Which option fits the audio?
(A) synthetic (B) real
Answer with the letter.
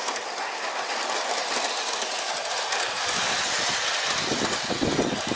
B